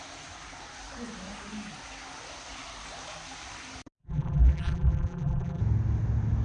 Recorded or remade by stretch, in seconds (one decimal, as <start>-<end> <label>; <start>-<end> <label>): 0.0-4.0 recorded; 4.0-5.6 remade; 5.6-6.4 recorded